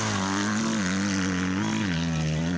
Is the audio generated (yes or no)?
no